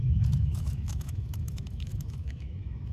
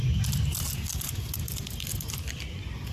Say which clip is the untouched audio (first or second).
second